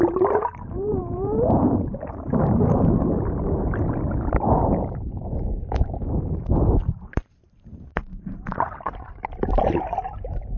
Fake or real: fake